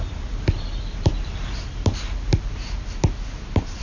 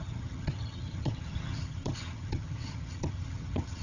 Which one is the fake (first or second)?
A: second